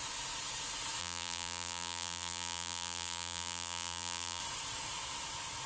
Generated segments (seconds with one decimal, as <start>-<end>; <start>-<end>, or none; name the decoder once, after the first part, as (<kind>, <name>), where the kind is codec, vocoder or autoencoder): 1.0-4.4 (vocoder, BigVGAN v2)